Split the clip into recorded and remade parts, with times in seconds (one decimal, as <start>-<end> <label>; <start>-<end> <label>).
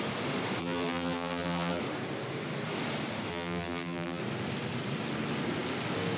0.0-0.6 recorded; 0.6-1.8 remade; 1.8-3.3 recorded; 3.3-4.2 remade; 4.2-6.2 recorded